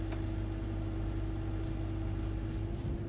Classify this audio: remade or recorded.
recorded